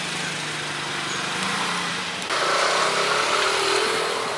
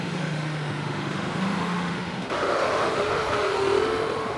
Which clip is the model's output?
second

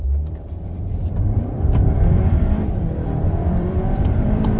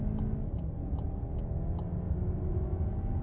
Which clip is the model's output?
first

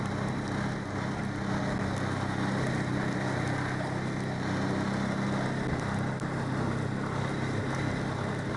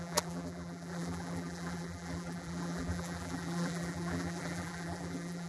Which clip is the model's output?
second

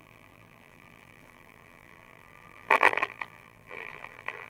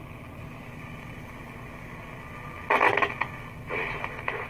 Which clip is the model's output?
first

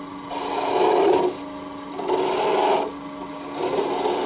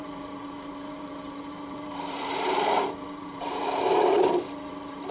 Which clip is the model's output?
second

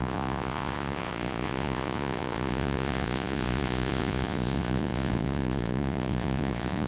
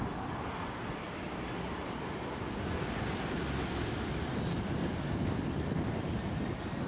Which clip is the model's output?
first